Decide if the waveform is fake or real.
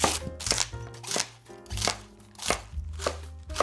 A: real